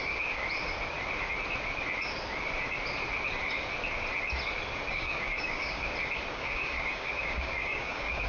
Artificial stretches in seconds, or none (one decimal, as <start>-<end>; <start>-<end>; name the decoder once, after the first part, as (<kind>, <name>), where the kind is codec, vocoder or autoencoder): 0.0-0.4 (codec, DAC); 4.9-5.8; 6.3-8.3